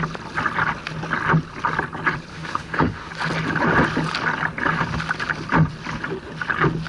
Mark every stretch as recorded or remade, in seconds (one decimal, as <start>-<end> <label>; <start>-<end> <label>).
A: 0.0-2.3 recorded; 2.3-3.1 remade; 3.1-6.9 recorded

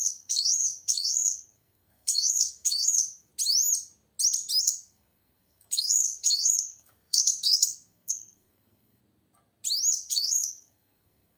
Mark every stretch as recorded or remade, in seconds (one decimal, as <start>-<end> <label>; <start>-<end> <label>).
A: 0.0-3.3 remade; 3.3-4.6 recorded; 4.6-9.0 remade; 9.0-9.9 recorded; 9.9-11.4 remade

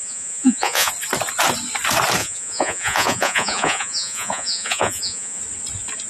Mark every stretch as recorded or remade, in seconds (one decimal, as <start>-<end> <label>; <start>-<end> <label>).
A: 0.0-0.9 remade; 0.9-2.2 recorded; 2.2-5.4 remade; 5.4-6.1 recorded

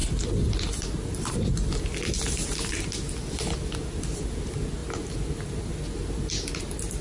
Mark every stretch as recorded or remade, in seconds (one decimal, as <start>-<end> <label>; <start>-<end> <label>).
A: 0.0-7.0 recorded

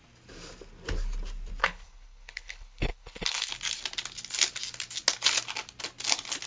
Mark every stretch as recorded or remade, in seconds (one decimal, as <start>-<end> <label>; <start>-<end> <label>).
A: 0.0-1.6 recorded; 1.6-3.5 remade; 3.5-6.5 recorded

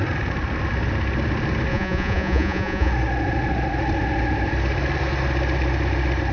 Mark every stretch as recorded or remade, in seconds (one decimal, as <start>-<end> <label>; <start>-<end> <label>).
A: 0.0-1.7 recorded; 1.7-2.9 remade; 2.9-6.3 recorded

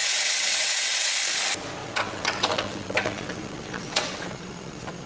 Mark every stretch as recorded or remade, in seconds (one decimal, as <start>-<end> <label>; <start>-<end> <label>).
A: 0.0-1.1 remade; 1.1-1.8 recorded; 1.8-5.1 remade